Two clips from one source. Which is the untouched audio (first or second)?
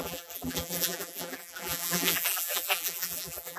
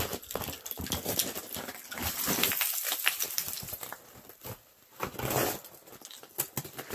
second